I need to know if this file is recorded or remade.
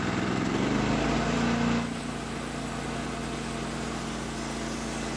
recorded